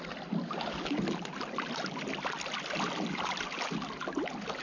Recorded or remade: recorded